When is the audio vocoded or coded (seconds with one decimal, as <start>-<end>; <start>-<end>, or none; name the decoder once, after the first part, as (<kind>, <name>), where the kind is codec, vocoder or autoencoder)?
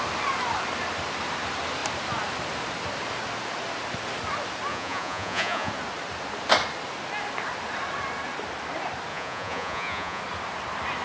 4.7-5.7 (vocoder, Vocos); 9.1-10.2